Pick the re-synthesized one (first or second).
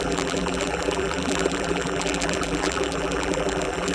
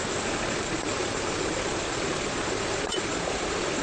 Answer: first